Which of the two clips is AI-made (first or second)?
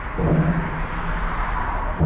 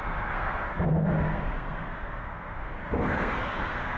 second